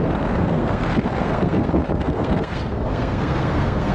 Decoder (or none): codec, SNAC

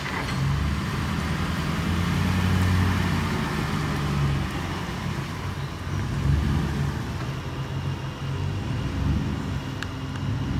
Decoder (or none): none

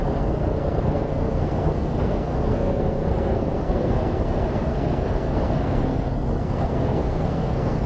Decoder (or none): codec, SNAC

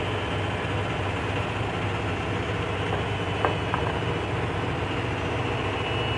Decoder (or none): none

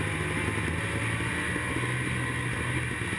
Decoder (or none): none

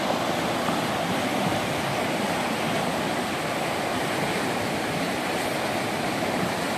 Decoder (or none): none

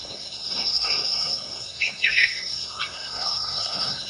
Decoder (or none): codec, SNAC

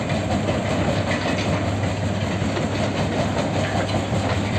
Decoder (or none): none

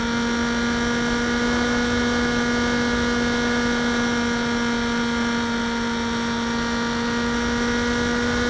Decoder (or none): none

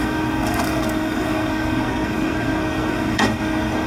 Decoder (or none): codec, SNAC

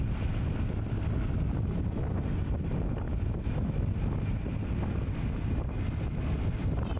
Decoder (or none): none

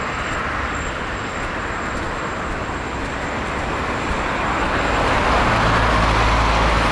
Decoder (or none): none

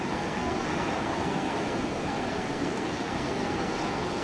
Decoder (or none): codec, SNAC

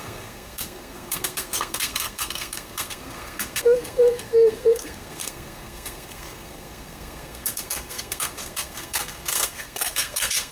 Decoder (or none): codec, SNAC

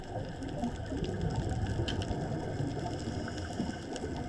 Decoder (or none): none